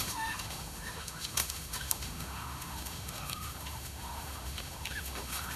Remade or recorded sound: remade